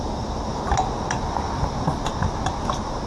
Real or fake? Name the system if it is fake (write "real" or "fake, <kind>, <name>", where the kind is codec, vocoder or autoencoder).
real